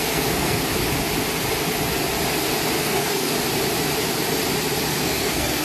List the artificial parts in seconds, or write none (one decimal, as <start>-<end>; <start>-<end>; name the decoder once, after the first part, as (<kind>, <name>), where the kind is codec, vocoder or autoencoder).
0.0-0.7 (codec, SNAC); 2.8-3.3; 5.0-5.6